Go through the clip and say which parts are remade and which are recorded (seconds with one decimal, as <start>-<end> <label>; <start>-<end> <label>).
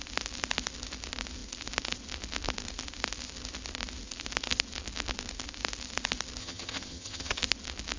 0.0-6.4 recorded; 6.4-7.4 remade; 7.4-8.0 recorded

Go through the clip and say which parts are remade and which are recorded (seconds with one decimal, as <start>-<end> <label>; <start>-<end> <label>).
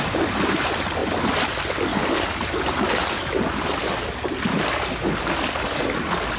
0.0-6.4 recorded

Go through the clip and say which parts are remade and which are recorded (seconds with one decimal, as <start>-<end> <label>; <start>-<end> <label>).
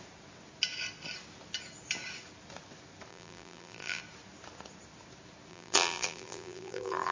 0.0-3.1 recorded; 3.1-4.0 remade; 4.0-5.5 recorded; 5.5-7.1 remade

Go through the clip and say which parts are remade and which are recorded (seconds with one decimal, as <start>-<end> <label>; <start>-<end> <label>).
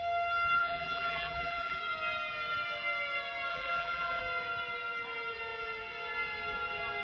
0.0-0.6 recorded; 0.6-1.8 remade; 1.8-3.5 recorded; 3.5-4.2 remade; 4.2-7.0 recorded